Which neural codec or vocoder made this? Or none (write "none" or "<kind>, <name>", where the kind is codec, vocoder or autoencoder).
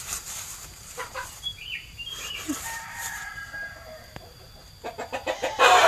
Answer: vocoder, BigVGAN v2